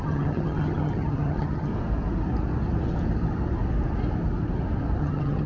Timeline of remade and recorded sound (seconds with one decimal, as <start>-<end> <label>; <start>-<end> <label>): 0.0-1.7 remade; 1.7-5.0 recorded; 5.0-5.5 remade